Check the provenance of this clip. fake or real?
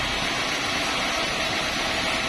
real